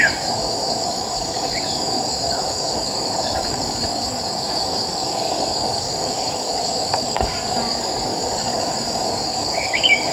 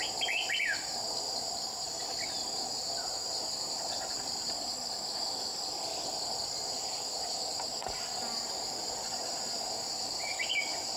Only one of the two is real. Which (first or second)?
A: second